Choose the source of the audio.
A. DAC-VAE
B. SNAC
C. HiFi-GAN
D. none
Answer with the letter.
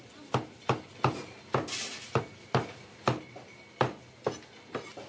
D